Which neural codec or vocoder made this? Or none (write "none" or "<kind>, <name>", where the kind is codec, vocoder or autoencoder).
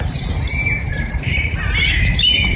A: vocoder, BigVGAN v2